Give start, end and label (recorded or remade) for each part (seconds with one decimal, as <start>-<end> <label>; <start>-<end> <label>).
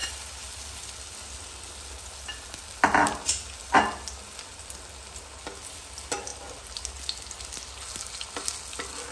0.0-9.1 recorded